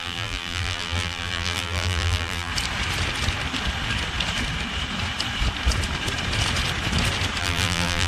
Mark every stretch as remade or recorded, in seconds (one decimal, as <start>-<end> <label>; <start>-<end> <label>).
0.0-2.5 remade; 2.5-7.4 recorded; 7.4-8.1 remade